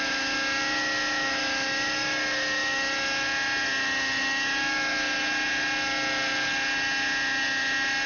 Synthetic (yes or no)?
no